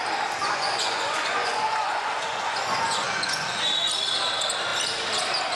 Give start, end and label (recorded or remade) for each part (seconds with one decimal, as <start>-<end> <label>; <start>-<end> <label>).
0.0-0.4 recorded; 0.4-3.7 remade; 3.7-5.6 recorded